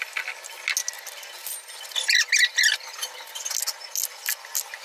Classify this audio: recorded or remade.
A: recorded